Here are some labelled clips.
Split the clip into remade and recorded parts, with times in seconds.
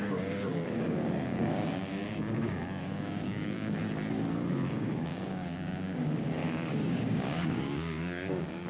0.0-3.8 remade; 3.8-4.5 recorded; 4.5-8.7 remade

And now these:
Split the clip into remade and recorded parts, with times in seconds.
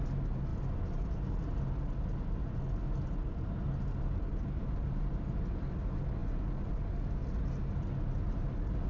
0.0-8.9 recorded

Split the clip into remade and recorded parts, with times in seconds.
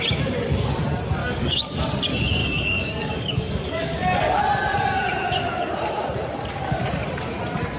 0.0-1.2 recorded; 1.2-1.8 remade; 1.8-2.4 recorded; 2.4-4.4 remade; 4.4-7.8 recorded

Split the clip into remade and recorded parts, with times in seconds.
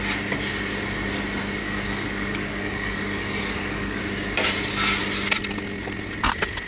0.0-1.6 recorded; 1.6-4.0 remade; 4.0-6.7 recorded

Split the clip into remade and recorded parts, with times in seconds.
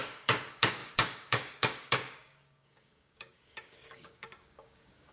0.0-5.1 remade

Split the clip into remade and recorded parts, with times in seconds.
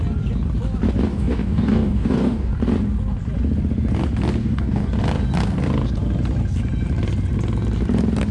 0.0-1.1 recorded; 1.1-2.5 remade; 2.5-4.4 recorded; 4.4-4.9 remade; 4.9-8.3 recorded